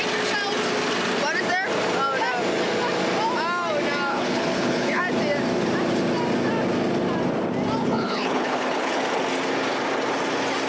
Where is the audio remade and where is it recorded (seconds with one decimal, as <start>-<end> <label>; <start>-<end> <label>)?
0.0-4.1 recorded; 4.1-5.0 remade; 5.0-7.8 recorded; 7.8-9.0 remade; 9.0-10.7 recorded